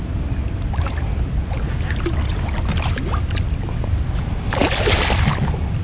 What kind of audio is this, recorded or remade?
recorded